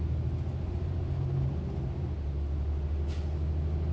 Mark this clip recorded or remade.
recorded